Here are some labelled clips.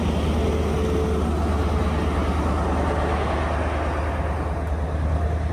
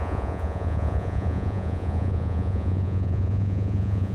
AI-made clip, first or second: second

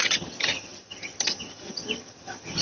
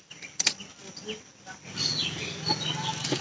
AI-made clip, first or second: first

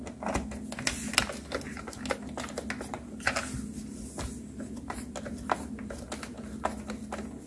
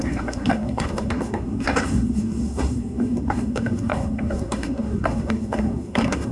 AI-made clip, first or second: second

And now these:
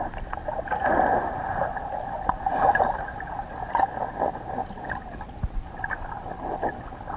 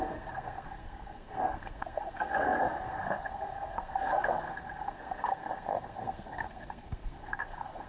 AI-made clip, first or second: second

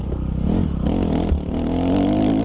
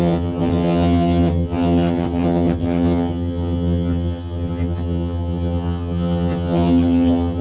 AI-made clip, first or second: second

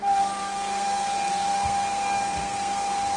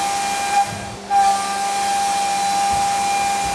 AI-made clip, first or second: first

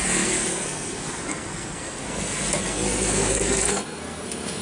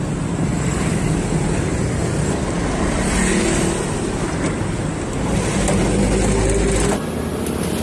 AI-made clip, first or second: first